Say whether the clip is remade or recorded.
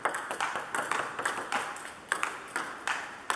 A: recorded